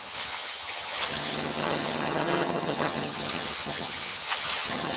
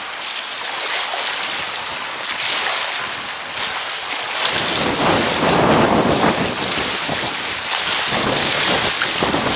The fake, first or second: first